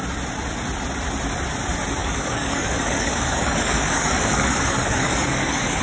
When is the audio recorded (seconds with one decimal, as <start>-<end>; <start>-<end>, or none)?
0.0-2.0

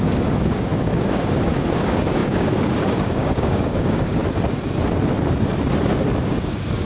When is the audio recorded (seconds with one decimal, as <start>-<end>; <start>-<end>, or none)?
4.2-6.2

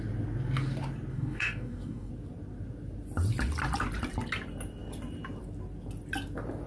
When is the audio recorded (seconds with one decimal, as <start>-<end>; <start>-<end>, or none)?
0.0-1.1; 2.1-6.7

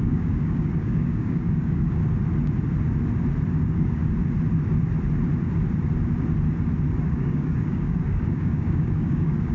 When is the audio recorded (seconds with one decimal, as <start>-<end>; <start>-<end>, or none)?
2.0-3.5; 4.0-7.0